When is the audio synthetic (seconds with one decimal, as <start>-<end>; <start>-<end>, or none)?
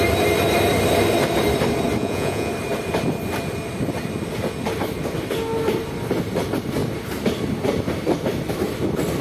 2.0-2.5